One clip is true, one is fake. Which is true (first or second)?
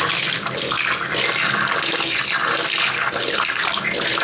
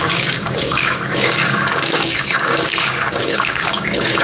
first